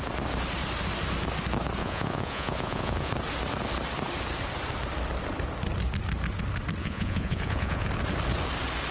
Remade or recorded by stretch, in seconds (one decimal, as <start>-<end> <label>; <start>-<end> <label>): 0.0-1.8 recorded; 1.8-3.1 remade; 3.1-6.8 recorded; 6.8-7.9 remade; 7.9-8.9 recorded

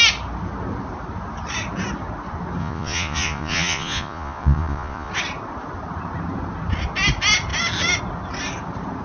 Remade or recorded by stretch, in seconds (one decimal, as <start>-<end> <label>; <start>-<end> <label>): 0.0-2.6 recorded; 2.6-5.1 remade; 5.1-9.0 recorded

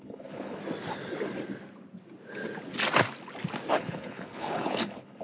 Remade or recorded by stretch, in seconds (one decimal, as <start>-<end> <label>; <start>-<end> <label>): 0.0-0.6 remade; 0.6-3.7 recorded; 3.7-5.2 remade

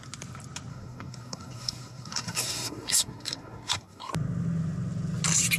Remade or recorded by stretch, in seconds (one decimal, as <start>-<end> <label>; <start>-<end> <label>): 0.0-0.7 recorded; 0.7-4.1 remade; 4.1-5.6 recorded

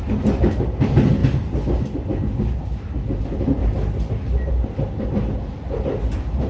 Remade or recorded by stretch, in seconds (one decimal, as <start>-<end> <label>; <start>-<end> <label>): 0.0-6.5 recorded

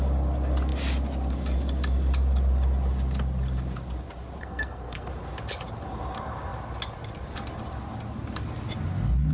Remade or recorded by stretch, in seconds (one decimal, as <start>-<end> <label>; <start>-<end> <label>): 0.0-4.4 recorded; 4.4-5.1 remade; 5.1-9.3 recorded